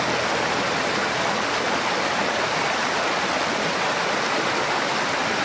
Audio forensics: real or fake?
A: real